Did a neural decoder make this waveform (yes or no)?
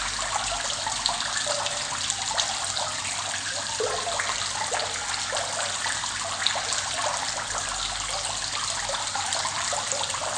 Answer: no